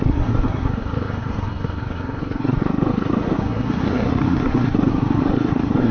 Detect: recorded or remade remade